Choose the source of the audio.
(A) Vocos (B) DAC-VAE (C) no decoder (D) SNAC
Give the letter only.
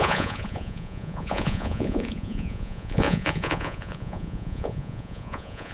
A